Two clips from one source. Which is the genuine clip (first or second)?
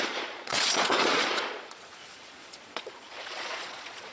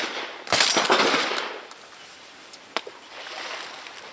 second